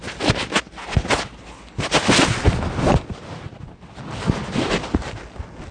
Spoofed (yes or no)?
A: no